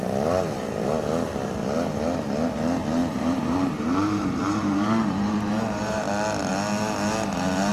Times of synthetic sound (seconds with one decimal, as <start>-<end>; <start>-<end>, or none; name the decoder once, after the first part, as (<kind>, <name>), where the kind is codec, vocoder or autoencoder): 3.0-6.1 (vocoder, BigVGAN v2)